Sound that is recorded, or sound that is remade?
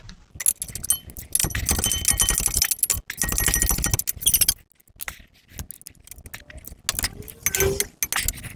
recorded